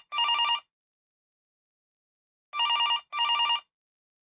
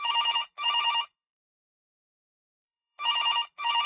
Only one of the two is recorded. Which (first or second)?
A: first